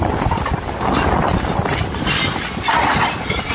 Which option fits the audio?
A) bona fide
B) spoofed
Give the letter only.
A